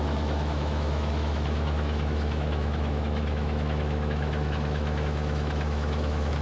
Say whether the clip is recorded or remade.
remade